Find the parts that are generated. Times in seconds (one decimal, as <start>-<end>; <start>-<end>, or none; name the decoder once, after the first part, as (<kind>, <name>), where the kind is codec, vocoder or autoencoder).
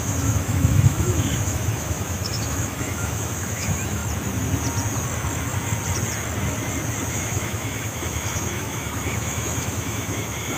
0.0-4.0 (autoencoder, DAC-VAE); 7.1-10.6